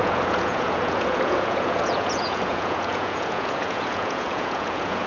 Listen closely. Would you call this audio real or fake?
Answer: fake